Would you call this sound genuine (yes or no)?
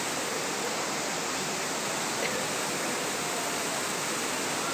yes